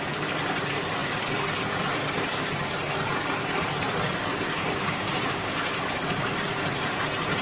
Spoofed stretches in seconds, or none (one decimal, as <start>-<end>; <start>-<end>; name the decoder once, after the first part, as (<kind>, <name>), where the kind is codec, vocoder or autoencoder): 4.3-5.9 (codec, DAC)